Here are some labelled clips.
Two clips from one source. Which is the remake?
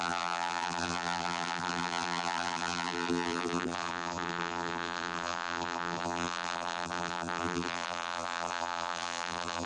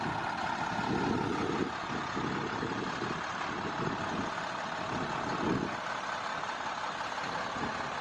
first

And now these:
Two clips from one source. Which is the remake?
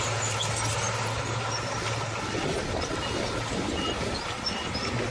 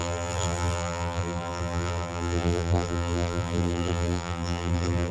second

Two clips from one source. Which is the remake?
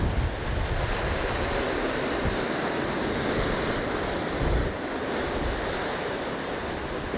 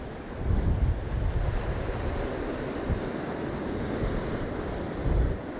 second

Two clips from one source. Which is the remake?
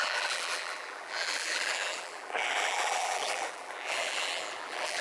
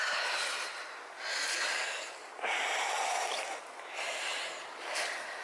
first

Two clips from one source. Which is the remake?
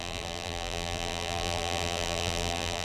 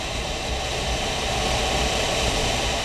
first